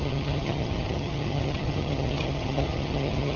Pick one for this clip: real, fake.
fake